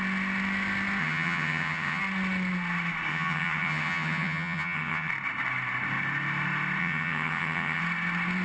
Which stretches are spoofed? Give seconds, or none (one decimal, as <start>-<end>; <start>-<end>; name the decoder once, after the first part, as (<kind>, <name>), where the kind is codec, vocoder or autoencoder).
1.0-2.0 (vocoder, HiFi-GAN); 3.1-5.1; 6.8-7.8

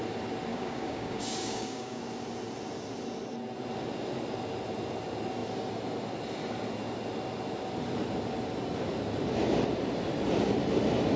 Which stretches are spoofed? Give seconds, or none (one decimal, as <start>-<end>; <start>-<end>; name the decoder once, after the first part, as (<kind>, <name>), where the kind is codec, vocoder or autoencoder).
0.5-2.0 (codec, DAC)